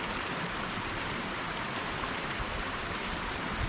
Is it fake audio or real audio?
fake